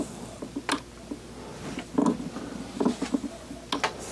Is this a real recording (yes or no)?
yes